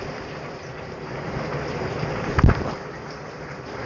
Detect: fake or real real